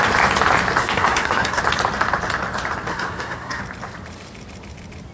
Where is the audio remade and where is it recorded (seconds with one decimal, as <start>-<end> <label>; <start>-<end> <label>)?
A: 0.0-0.8 recorded; 0.8-1.6 remade; 1.6-2.9 recorded; 2.9-3.6 remade; 3.6-5.1 recorded